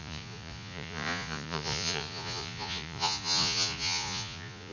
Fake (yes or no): yes